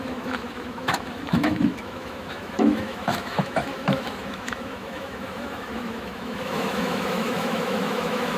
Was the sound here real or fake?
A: fake